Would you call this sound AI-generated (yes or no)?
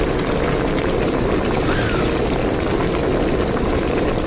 no